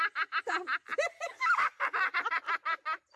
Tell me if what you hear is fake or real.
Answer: real